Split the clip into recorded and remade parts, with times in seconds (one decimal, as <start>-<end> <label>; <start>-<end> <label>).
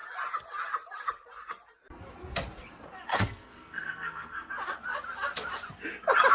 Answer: 0.0-3.1 recorded; 3.1-4.5 remade; 4.5-6.3 recorded